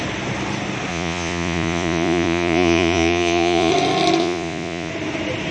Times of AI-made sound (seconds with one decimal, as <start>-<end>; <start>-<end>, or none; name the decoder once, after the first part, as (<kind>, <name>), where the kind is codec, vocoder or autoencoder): 0.9-3.7 (vocoder, Vocos); 4.2-4.9